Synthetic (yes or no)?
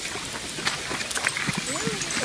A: no